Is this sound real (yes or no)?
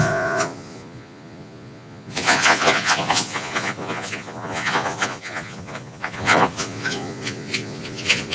no